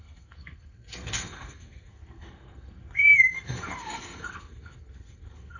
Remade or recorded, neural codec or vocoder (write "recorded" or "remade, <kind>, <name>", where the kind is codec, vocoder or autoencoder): remade, codec, SNAC